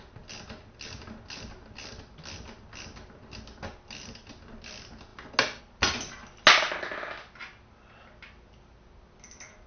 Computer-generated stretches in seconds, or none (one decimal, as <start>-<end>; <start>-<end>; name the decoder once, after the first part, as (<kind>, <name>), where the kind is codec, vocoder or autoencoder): none